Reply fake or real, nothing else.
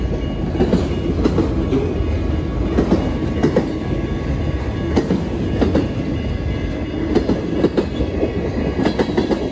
real